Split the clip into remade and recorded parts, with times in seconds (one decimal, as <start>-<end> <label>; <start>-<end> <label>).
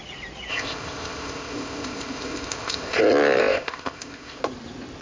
0.0-0.5 recorded; 0.5-3.0 remade; 3.0-3.4 recorded; 3.4-4.4 remade; 4.4-5.0 recorded